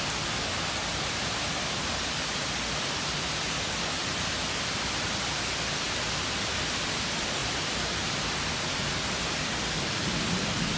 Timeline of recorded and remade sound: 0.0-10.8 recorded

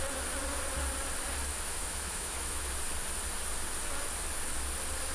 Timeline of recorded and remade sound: 0.0-1.5 recorded; 1.5-2.7 remade; 2.7-5.1 recorded

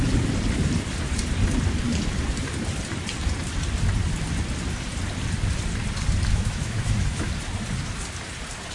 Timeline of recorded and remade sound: 0.0-6.3 recorded; 6.3-7.3 remade; 7.3-8.7 recorded